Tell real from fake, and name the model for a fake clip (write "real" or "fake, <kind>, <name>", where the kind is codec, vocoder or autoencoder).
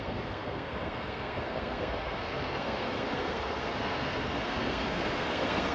fake, codec, SNAC